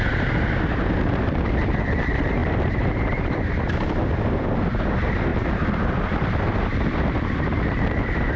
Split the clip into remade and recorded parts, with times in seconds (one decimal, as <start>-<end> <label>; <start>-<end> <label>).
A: 0.0-2.4 recorded; 2.4-3.5 remade; 3.5-8.4 recorded